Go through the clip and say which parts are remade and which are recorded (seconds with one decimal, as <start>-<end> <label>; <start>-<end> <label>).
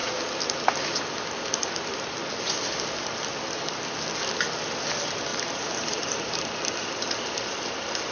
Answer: 0.0-4.8 recorded; 4.8-8.1 remade